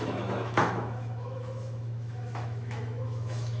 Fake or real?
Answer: fake